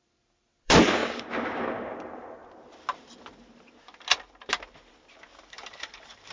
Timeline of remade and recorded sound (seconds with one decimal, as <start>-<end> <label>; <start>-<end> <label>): 0.0-1.0 remade; 1.0-1.6 recorded; 1.6-2.4 remade; 2.4-5.3 recorded; 5.3-6.3 remade